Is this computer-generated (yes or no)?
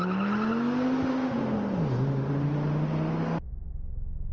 no